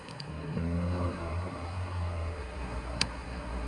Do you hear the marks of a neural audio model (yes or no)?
yes